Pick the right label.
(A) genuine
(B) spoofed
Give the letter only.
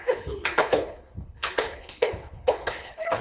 B